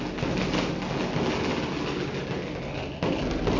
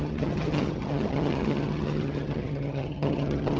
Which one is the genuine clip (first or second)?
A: first